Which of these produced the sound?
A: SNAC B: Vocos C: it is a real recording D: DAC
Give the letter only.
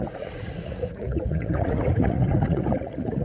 B